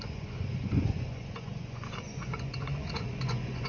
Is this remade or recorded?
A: remade